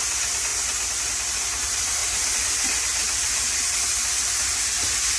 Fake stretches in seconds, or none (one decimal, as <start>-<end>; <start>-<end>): none